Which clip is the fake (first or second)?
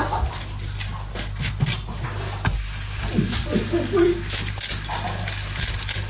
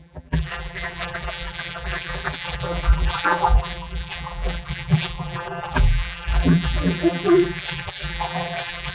second